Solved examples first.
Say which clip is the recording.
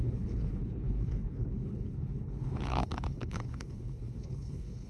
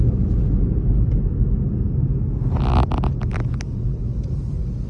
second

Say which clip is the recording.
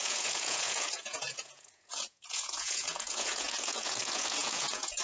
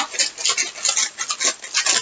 second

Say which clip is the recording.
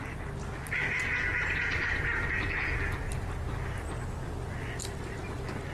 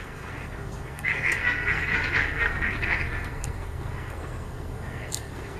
first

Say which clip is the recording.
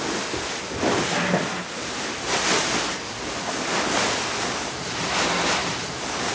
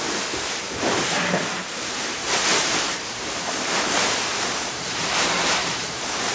first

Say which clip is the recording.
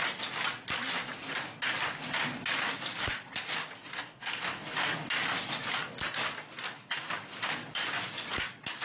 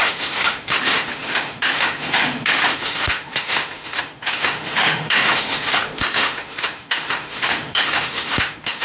first